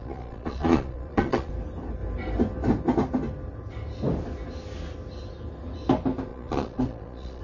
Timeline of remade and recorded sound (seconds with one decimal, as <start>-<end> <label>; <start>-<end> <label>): 0.0-1.5 remade; 1.5-6.3 recorded; 6.3-7.4 remade